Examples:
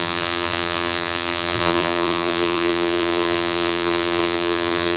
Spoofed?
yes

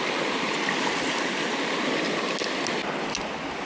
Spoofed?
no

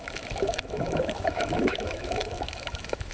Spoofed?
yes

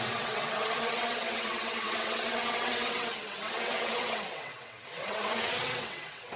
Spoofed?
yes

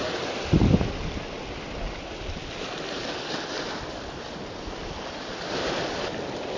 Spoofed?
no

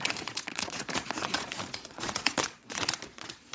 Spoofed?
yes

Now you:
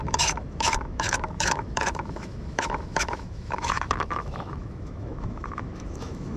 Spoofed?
yes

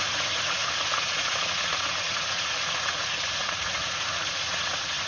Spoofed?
yes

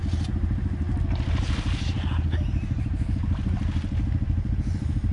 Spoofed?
no